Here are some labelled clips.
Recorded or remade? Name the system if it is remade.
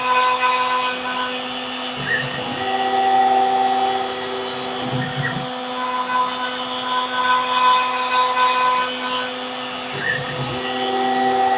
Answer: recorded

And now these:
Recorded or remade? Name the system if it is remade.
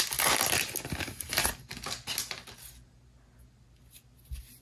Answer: recorded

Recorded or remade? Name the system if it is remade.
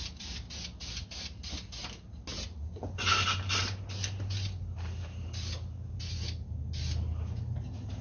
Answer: recorded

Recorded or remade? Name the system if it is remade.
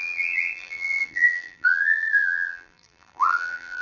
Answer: remade, vocoder, BigVGAN v2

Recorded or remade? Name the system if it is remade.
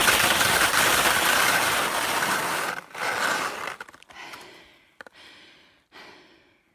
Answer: recorded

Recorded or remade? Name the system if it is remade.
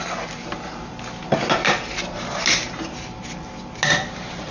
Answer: recorded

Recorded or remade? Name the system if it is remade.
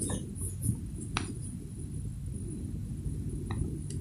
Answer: recorded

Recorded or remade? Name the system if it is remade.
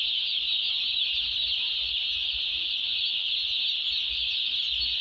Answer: recorded